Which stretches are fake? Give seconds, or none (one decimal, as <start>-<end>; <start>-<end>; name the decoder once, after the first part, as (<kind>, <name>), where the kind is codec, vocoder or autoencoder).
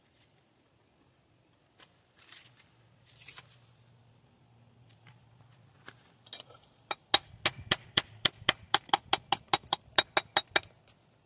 none